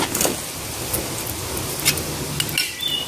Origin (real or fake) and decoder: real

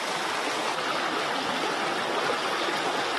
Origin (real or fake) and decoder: real